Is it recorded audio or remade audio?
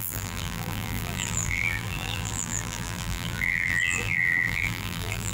remade